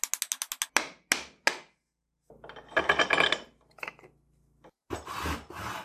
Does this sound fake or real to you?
real